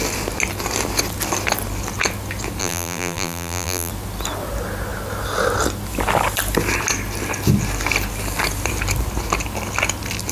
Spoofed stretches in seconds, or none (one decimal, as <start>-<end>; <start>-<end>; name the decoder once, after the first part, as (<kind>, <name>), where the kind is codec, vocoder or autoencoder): 2.6-3.9 (vocoder, BigVGAN v2)